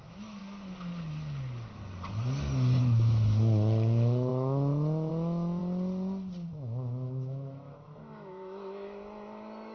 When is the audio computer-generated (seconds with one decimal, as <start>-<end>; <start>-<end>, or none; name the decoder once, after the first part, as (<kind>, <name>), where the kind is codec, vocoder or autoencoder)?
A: 0.0-0.4 (autoencoder, DAC-VAE); 2.8-5.6; 6.5-9.7

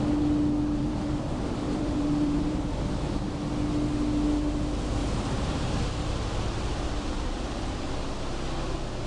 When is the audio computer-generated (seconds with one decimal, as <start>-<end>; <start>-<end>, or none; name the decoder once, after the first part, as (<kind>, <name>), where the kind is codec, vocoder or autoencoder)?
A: 0.8-3.5 (vocoder, BigVGAN v2); 5.0-7.8

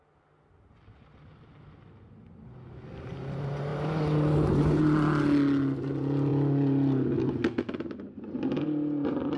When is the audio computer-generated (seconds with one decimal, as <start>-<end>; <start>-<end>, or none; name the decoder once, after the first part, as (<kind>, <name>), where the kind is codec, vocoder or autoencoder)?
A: 3.7-4.8 (vocoder, BigVGAN v2)

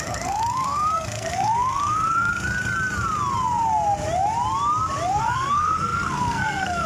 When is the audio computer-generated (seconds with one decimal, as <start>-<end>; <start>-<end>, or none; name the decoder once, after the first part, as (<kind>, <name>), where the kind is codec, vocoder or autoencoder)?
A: 0.0-2.3 (codec, SNAC); 5.1-6.9

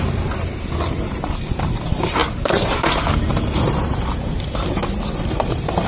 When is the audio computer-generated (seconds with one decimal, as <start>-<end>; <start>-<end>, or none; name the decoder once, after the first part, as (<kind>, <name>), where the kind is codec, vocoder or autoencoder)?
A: 0.0-5.9 (vocoder, BigVGAN v2)

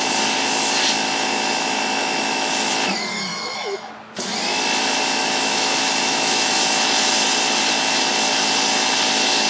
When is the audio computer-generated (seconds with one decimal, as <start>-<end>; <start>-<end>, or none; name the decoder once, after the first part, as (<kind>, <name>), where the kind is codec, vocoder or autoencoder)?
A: 2.0-2.7 (autoencoder, DAC-VAE); 3.3-3.9; 5.2-6.6

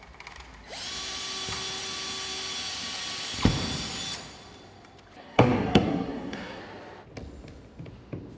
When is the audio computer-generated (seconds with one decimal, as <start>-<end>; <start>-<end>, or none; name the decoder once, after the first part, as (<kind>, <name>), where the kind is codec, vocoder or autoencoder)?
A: 5.2-6.6 (codec, SNAC)